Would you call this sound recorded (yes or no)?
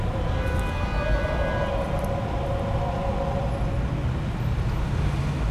yes